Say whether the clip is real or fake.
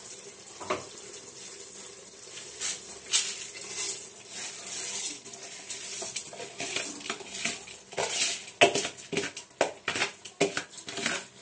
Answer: real